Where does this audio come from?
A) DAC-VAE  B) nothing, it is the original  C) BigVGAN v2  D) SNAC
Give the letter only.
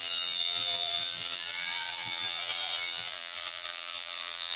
C